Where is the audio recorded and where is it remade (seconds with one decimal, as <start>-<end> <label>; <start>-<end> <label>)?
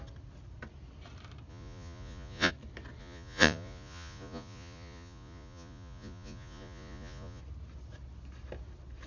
0.0-1.5 recorded; 1.5-2.5 remade; 2.5-3.0 recorded; 3.0-7.4 remade; 7.4-9.1 recorded